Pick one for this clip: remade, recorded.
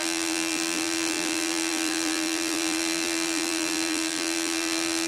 remade